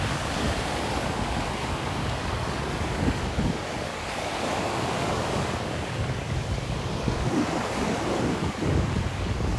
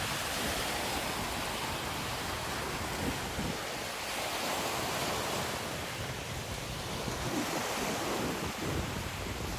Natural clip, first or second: second